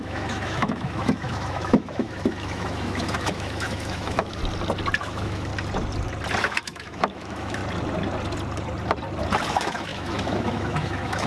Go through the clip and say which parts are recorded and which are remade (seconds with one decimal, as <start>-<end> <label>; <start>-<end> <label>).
0.0-4.4 remade; 4.4-5.0 recorded; 5.0-5.5 remade; 5.5-6.4 recorded; 6.4-7.6 remade; 7.6-9.5 recorded; 9.5-11.3 remade

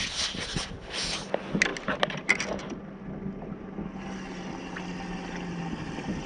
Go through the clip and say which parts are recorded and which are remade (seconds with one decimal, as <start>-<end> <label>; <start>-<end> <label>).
0.0-6.3 recorded

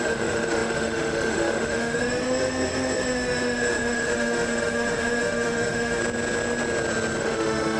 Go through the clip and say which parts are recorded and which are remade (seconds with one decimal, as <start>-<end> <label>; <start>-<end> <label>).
0.0-6.0 remade; 6.0-7.2 recorded; 7.2-7.8 remade

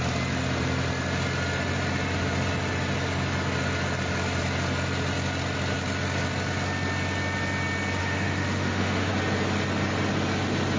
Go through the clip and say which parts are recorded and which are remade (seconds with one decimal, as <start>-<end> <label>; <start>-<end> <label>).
0.0-8.0 recorded; 8.0-9.1 remade; 9.1-10.8 recorded

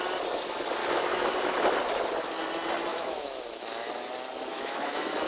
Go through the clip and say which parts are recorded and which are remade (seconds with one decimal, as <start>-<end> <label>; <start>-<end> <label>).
0.0-0.8 recorded; 0.8-1.3 remade; 1.3-2.9 recorded; 2.9-4.1 remade; 4.1-4.5 recorded; 4.5-5.3 remade